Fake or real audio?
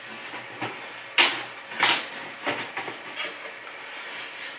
real